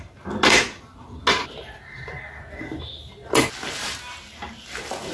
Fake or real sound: real